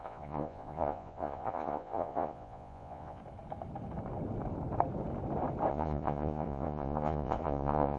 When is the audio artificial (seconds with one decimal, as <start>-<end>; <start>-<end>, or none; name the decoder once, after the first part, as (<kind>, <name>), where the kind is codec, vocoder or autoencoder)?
0.0-3.2 (vocoder, Vocos); 5.7-8.0